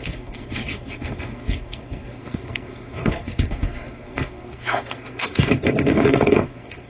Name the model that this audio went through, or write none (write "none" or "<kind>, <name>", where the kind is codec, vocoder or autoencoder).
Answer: codec, SNAC